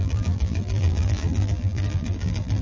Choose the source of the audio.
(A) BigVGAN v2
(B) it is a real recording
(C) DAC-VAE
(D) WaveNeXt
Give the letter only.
A